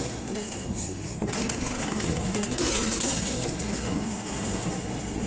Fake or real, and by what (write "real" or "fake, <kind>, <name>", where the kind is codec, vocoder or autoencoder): fake, codec, SNAC